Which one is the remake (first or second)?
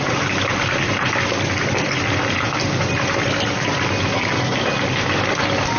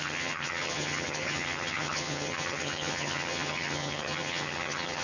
second